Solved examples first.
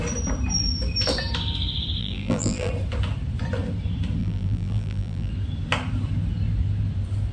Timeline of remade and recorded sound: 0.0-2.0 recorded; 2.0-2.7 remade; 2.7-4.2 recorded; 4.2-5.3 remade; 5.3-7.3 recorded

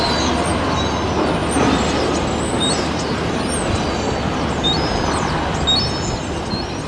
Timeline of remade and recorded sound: 0.0-6.9 recorded

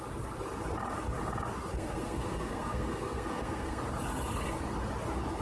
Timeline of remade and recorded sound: 0.0-1.7 recorded; 1.7-3.8 remade; 3.8-5.4 recorded

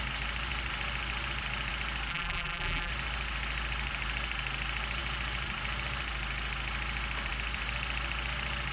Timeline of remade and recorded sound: 0.0-2.1 recorded; 2.1-2.9 remade; 2.9-8.7 recorded

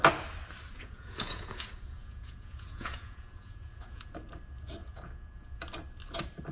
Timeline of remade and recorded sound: 0.0-0.7 recorded; 0.7-4.3 remade; 4.3-4.8 recorded; 4.8-5.7 remade; 5.7-6.5 recorded